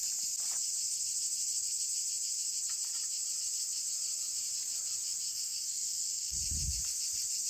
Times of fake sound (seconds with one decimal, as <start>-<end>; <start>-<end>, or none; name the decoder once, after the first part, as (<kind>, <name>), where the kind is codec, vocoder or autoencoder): 5.3-6.4 (codec, SNAC)